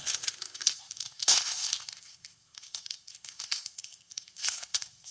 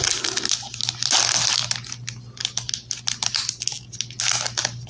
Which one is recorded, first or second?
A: second